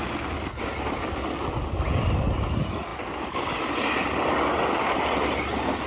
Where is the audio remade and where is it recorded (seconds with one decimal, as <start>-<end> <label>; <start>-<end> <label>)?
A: 0.0-5.9 recorded